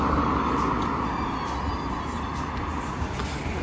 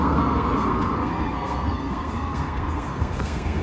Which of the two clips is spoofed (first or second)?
second